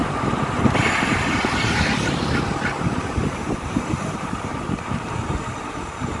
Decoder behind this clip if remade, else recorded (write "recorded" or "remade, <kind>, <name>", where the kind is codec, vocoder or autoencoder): remade, vocoder, BigVGAN v2